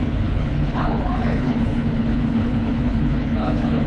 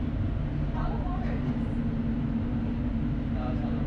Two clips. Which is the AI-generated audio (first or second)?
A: first